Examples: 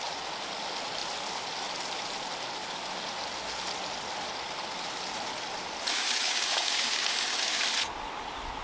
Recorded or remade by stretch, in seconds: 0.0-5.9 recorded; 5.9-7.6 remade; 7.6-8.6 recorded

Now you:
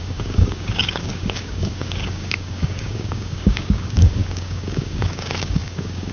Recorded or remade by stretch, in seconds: 0.0-6.1 remade

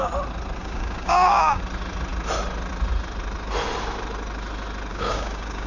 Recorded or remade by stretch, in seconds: 0.0-0.6 recorded; 0.6-1.6 remade; 1.6-4.9 recorded; 4.9-5.7 remade

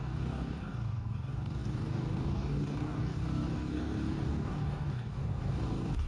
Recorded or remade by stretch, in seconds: 0.0-6.1 remade

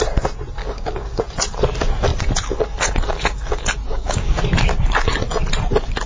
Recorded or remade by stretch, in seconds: 0.0-0.6 recorded; 0.6-1.2 remade; 1.2-3.9 recorded; 3.9-4.4 remade; 4.4-6.1 recorded

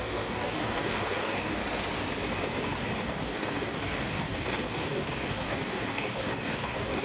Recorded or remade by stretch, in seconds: 0.0-1.6 remade; 1.6-3.0 recorded; 3.0-7.0 remade

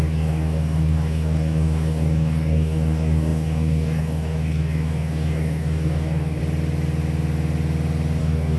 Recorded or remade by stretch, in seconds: 0.0-6.4 remade; 6.4-8.2 recorded; 8.2-8.6 remade